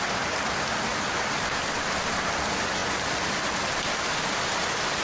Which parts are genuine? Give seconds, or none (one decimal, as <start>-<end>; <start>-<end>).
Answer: 0.0-5.0